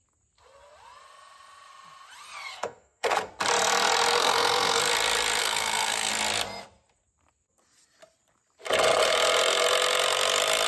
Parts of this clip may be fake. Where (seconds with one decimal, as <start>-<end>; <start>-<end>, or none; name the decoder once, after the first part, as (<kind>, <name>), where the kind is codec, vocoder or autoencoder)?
2.5-3.3 (codec, SNAC); 4.2-4.8; 5.4-6.1